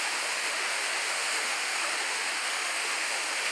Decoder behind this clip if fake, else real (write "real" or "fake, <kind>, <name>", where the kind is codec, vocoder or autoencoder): fake, autoencoder, DAC-VAE